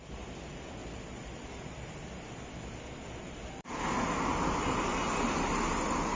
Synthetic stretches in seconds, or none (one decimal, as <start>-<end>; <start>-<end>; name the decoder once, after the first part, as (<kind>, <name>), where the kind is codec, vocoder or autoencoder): none